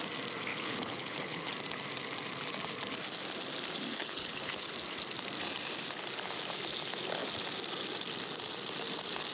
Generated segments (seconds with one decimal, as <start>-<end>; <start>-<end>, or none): 0.5-1.5; 4.0-4.7